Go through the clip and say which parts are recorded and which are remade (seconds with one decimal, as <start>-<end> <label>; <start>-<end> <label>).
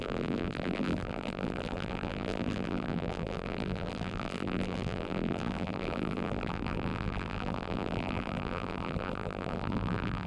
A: 0.0-10.3 remade